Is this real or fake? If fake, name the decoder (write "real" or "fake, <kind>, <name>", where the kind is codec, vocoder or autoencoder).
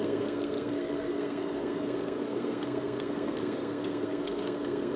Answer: fake, codec, SNAC